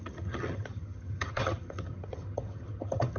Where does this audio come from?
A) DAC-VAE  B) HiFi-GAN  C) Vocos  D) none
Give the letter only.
B